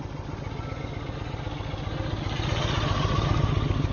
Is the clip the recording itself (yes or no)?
yes